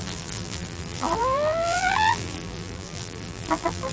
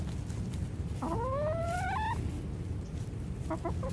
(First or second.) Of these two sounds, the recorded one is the second